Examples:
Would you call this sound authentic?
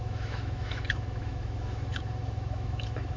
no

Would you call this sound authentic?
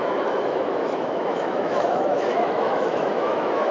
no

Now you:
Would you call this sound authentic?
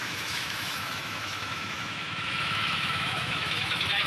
no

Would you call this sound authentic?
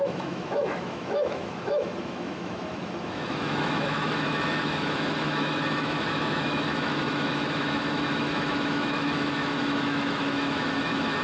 no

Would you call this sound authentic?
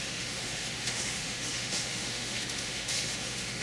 no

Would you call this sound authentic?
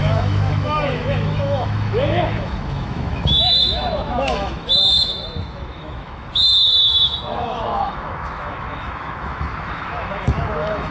no